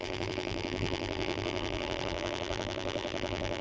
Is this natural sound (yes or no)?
no